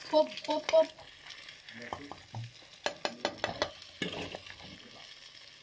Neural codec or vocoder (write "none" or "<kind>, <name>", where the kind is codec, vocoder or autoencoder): none